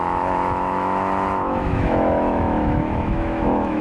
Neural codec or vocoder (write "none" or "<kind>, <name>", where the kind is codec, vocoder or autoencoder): autoencoder, DAC-VAE